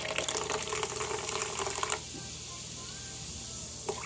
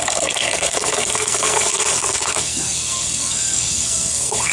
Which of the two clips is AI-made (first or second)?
second